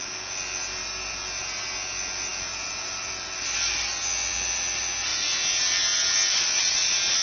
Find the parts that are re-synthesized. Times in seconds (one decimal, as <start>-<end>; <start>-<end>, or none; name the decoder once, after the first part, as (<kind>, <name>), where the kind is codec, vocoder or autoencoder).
none